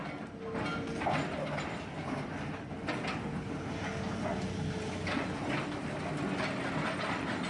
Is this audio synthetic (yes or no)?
no